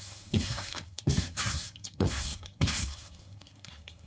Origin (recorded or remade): remade